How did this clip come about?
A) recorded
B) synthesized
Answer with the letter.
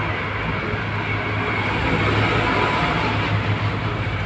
A